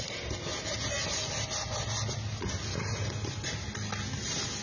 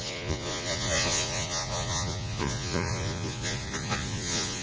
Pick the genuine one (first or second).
first